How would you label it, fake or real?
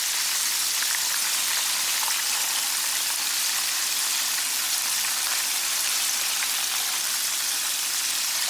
fake